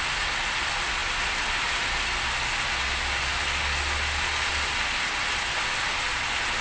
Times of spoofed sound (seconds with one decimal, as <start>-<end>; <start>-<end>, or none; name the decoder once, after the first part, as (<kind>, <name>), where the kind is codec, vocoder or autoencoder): none